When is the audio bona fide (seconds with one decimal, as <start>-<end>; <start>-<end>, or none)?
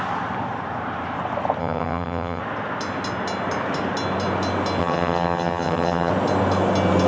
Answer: 0.0-1.6; 2.4-4.8; 6.1-7.1